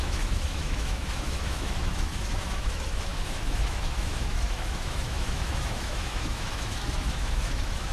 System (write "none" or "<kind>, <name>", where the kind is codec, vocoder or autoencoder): autoencoder, DAC-VAE